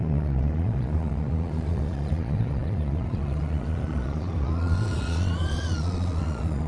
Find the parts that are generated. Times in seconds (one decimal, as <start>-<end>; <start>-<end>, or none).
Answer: 0.0-6.7